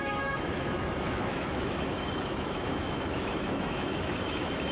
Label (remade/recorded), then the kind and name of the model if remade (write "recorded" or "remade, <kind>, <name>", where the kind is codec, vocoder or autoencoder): remade, autoencoder, DAC-VAE